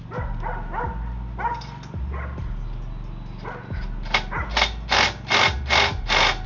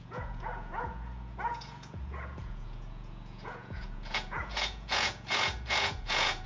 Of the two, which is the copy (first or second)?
second